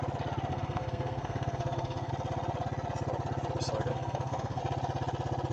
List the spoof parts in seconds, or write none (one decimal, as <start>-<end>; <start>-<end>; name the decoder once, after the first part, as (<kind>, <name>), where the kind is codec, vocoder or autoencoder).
0.5-2.1 (codec, SNAC); 3.9-4.6